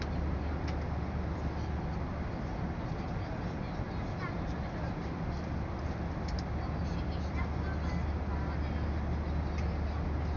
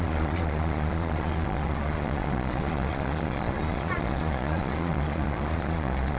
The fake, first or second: second